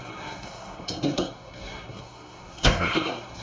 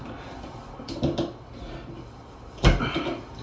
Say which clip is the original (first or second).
second